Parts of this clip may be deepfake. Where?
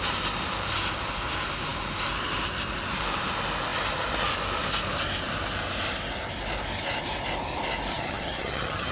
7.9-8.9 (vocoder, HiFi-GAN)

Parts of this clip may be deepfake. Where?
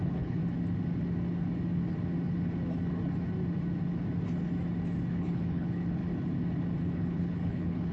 0.0-0.4 (codec, HILCodec); 5.1-6.0; 6.8-7.9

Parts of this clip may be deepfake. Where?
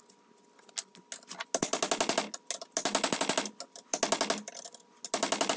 none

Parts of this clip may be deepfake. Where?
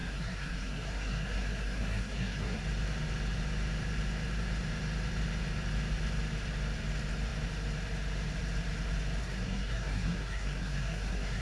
0.0-2.6 (codec, SNAC); 9.2-11.4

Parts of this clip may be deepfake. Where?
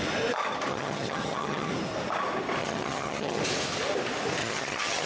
0.7-1.7 (vocoder, HiFi-GAN); 2.6-3.4; 4.4-5.1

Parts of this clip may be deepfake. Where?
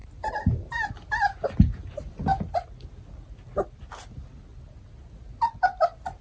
none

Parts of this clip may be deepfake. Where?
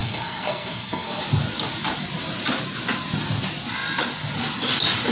0.0-1.2 (codec, SNAC)